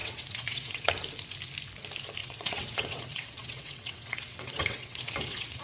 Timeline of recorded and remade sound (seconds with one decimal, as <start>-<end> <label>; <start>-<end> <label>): 0.0-0.9 remade; 0.9-2.2 recorded; 2.2-5.6 remade